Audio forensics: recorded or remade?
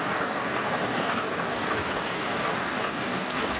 remade